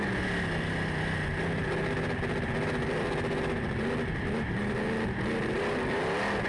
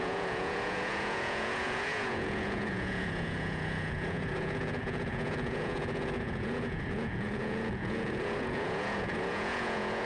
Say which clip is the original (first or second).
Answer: first